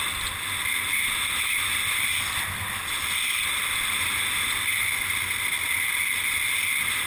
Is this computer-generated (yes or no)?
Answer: no